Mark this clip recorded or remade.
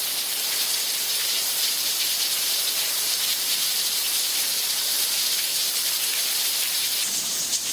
remade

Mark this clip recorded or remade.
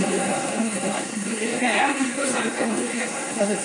remade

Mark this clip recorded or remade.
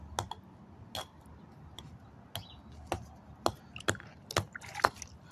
recorded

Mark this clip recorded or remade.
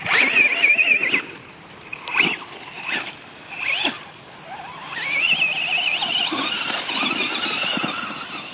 recorded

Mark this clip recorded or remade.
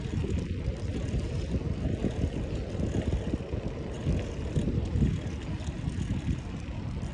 recorded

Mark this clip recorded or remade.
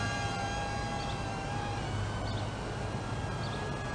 recorded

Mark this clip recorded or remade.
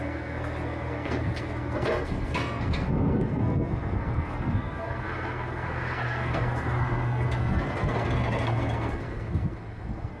remade